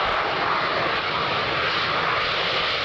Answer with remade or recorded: recorded